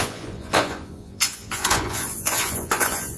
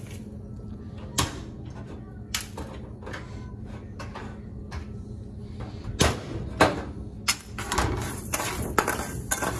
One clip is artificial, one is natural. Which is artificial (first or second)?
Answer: first